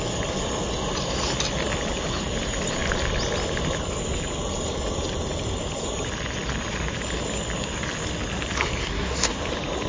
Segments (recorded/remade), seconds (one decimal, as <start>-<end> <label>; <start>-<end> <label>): 0.0-8.8 recorded; 8.8-9.4 remade; 9.4-9.9 recorded